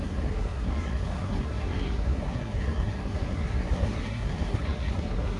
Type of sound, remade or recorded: remade